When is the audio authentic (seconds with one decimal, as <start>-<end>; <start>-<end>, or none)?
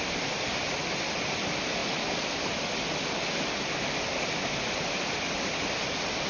0.0-6.3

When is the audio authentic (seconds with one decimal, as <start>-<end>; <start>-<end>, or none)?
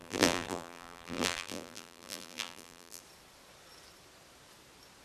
3.0-5.0